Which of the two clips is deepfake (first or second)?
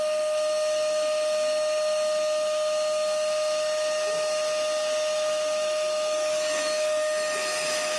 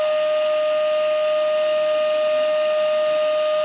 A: first